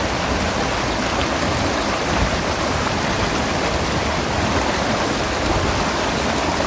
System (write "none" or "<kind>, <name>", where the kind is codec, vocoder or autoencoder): none